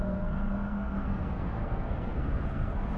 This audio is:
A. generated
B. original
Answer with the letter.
A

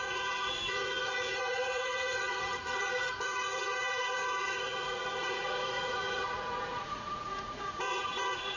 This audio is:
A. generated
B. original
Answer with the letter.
A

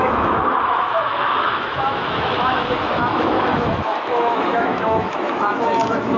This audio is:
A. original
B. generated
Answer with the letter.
B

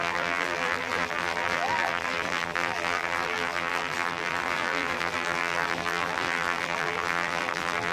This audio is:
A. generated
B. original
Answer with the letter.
A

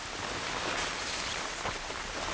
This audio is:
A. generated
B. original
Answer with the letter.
B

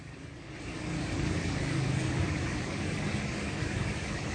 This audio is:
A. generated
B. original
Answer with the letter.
A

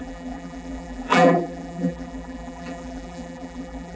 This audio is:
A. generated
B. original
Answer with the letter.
A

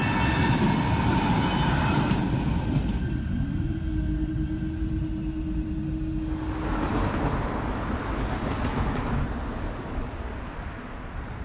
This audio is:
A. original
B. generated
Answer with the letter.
A